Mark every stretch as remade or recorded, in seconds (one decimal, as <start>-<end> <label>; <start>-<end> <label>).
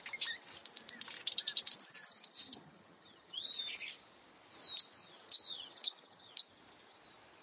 0.0-2.0 recorded; 2.0-3.6 remade; 3.6-5.0 recorded; 5.0-6.3 remade; 6.3-7.4 recorded